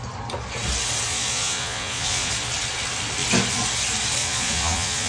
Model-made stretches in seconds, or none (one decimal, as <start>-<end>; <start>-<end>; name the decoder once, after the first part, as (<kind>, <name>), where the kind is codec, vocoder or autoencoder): 1.1-2.3 (vocoder, Vocos); 4.2-5.1